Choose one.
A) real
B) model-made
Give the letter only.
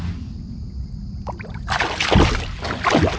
A